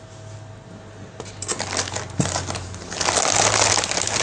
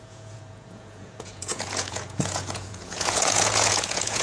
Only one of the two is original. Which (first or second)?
first